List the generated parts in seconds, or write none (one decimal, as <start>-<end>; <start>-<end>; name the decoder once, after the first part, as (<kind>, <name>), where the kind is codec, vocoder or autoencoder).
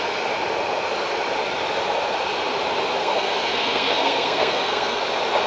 3.0-5.0 (codec, SNAC)